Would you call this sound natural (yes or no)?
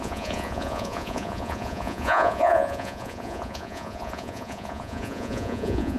no